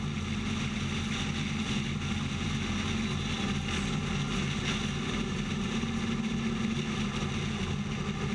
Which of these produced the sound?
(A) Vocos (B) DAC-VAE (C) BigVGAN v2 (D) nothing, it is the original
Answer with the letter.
D